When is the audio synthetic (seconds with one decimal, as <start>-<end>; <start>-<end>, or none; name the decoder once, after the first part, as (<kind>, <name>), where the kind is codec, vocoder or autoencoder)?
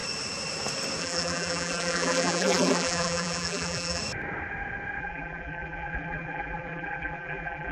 1.0-4.0 (vocoder, BigVGAN v2); 5.0-7.7